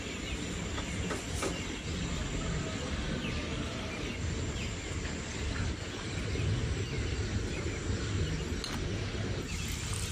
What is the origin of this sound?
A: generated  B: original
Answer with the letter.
B